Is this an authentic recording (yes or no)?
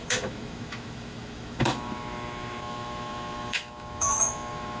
no